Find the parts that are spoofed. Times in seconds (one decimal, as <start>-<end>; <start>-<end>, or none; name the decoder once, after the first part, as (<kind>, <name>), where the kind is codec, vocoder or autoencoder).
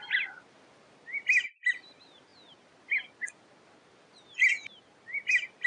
none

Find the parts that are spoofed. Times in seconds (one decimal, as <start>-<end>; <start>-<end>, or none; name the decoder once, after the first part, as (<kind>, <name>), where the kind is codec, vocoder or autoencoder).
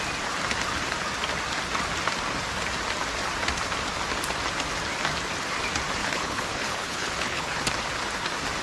6.0-7.6 (codec, HILCodec)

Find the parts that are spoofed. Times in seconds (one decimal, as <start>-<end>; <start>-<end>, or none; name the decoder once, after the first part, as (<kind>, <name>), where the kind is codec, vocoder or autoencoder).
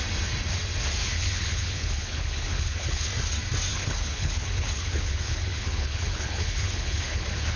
1.0-3.1 (codec, HILCodec); 3.7-7.6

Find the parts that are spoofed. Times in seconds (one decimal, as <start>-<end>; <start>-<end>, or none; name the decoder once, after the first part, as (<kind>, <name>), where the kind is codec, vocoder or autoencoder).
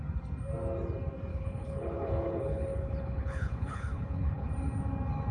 1.3-4.5 (codec, HILCodec)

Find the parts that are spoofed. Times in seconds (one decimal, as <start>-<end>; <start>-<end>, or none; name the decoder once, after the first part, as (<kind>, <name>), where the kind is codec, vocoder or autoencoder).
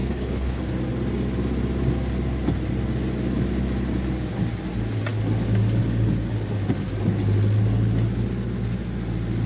0.0-0.6 (codec, HILCodec)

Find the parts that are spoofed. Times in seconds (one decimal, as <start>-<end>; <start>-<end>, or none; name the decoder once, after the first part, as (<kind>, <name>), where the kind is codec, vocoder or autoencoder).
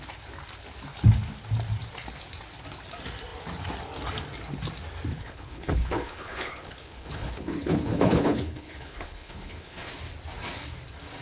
5.1-9.9 (codec, HILCodec)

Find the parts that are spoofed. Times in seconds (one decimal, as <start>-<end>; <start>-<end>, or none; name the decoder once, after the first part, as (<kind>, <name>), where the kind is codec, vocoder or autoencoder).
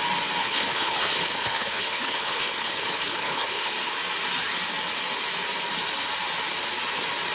0.4-3.7 (codec, HILCodec)